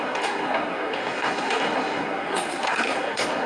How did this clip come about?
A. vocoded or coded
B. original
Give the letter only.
A